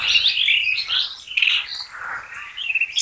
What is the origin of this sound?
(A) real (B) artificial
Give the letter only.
A